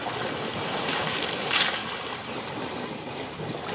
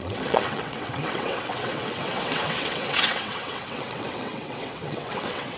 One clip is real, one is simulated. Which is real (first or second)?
first